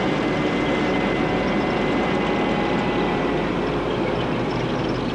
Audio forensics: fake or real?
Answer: real